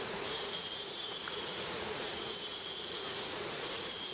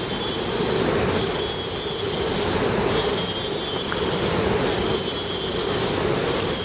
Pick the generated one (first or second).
first